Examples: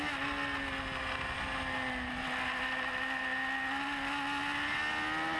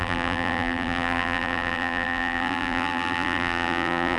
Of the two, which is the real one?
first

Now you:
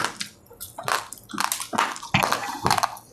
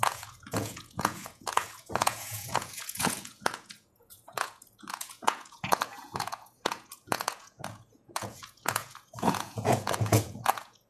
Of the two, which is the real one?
first